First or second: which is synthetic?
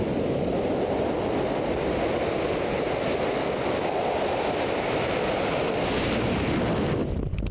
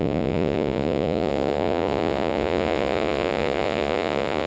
second